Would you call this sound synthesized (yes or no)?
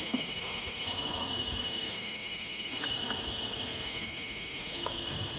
yes